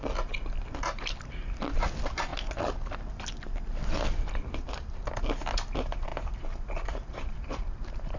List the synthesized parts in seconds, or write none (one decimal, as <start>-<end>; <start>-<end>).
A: 6.1-8.2